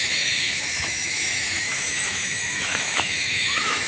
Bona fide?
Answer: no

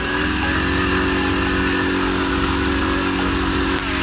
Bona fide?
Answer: yes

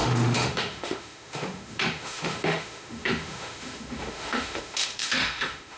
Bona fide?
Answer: no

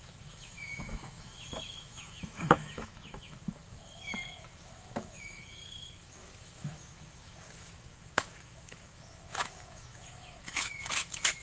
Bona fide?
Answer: no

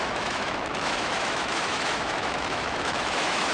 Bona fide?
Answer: no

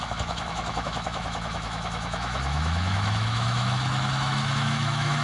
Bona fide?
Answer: no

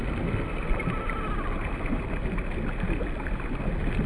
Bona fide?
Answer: yes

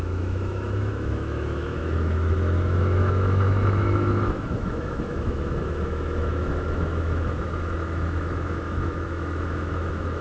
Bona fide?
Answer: no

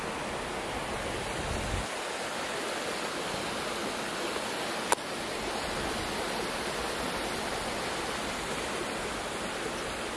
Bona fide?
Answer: yes